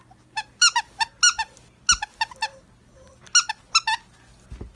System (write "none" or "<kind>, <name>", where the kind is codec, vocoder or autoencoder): none